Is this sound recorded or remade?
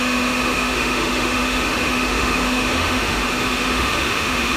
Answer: remade